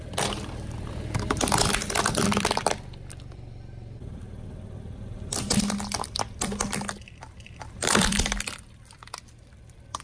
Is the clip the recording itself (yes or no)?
no